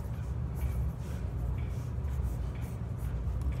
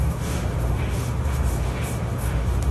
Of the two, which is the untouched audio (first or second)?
first